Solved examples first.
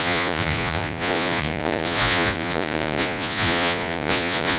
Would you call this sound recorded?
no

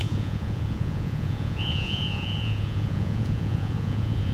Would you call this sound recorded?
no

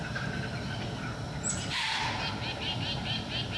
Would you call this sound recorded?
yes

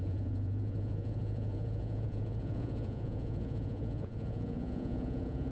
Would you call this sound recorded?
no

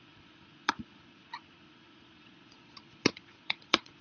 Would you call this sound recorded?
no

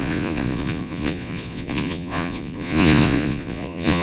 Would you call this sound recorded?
no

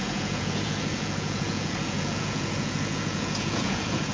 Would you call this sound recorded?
no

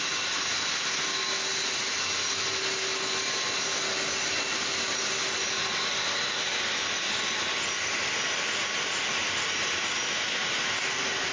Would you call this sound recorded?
yes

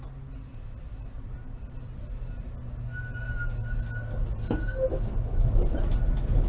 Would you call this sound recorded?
yes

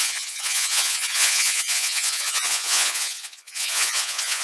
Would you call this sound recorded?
no